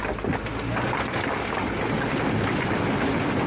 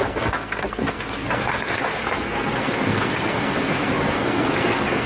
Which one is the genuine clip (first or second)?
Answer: first